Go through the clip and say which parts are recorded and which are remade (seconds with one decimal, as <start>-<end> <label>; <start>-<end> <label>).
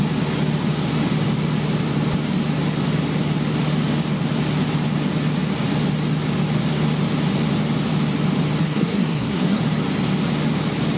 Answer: 0.0-8.6 recorded; 8.6-9.6 remade; 9.6-11.0 recorded